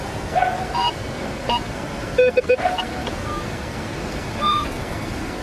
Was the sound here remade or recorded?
remade